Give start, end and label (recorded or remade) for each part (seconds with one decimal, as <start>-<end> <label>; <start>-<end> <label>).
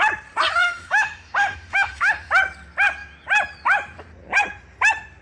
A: 0.0-0.6 recorded; 0.6-2.3 remade; 2.3-5.2 recorded